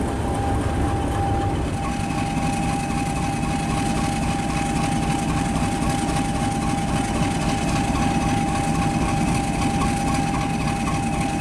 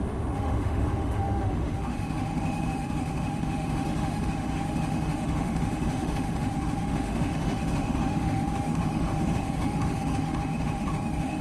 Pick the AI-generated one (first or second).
second